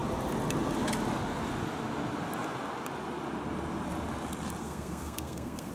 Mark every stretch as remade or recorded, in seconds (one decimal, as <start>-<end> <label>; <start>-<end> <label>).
0.0-4.6 recorded; 4.6-5.7 remade

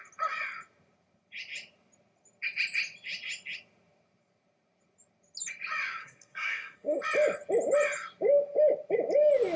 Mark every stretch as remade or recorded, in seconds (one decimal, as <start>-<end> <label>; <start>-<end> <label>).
0.0-6.0 recorded; 6.0-7.0 remade; 7.0-9.6 recorded

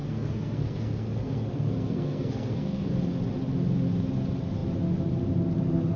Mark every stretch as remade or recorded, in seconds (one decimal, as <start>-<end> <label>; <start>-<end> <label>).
0.0-2.9 remade; 2.9-6.0 recorded

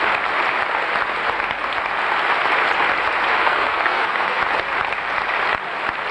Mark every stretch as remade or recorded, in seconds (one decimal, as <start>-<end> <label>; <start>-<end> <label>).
0.0-3.4 recorded; 3.4-4.4 remade; 4.4-6.1 recorded

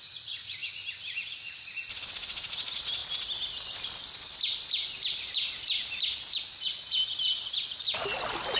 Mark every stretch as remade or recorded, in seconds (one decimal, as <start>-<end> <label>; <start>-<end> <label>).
0.0-8.6 recorded

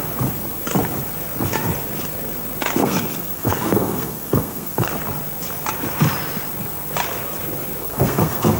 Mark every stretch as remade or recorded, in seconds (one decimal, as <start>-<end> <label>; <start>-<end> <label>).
0.0-2.8 recorded; 2.8-4.9 remade; 4.9-7.8 recorded; 7.8-8.6 remade

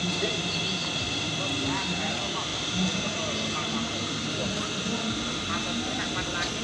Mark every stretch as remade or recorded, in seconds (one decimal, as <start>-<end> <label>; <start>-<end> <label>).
0.0-6.6 recorded

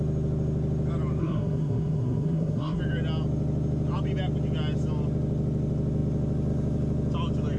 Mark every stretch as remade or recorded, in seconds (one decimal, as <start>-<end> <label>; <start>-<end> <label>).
0.0-1.2 recorded; 1.2-2.8 remade; 2.8-7.6 recorded